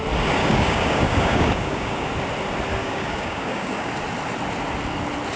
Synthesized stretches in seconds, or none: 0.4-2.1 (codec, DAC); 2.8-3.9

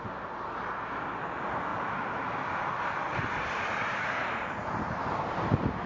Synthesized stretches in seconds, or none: 1.7-2.4 (vocoder, BigVGAN v2); 3.1-5.9

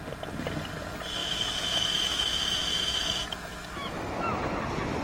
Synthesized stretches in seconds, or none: 1.2-4.2 (autoencoder, DAC-VAE)